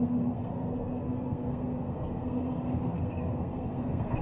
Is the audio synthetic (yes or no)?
yes